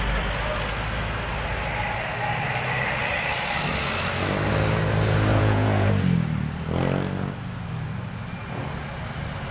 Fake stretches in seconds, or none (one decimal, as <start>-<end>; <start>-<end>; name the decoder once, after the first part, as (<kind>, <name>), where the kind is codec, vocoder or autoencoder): 5.3-5.9 (vocoder, Vocos)